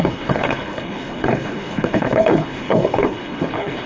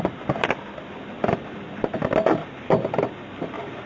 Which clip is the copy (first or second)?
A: first